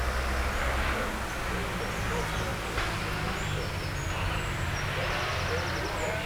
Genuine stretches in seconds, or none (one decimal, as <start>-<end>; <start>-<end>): 0.0-6.3